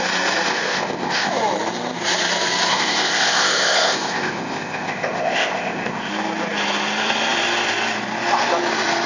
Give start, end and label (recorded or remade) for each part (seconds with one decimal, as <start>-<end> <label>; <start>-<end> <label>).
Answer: 0.0-0.5 recorded; 0.5-1.3 remade; 1.3-2.7 recorded; 2.7-6.1 remade; 6.1-9.1 recorded